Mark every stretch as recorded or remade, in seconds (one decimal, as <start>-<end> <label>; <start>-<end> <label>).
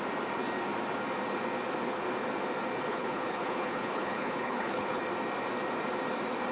0.0-2.9 recorded; 2.9-5.0 remade; 5.0-6.5 recorded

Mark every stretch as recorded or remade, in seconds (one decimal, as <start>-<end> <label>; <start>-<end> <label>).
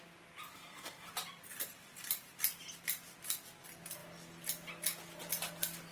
0.0-0.5 recorded; 0.5-1.1 remade; 1.1-5.9 recorded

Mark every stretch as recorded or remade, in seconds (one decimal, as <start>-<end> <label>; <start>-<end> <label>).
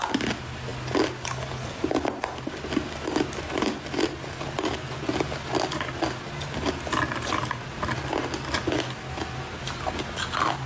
0.0-10.7 recorded